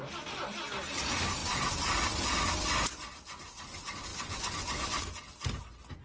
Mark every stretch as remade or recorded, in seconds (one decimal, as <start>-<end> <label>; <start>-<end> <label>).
0.0-4.1 recorded; 4.1-5.0 remade; 5.0-6.0 recorded